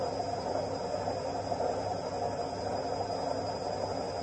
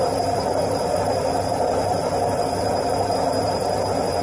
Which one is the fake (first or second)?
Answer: second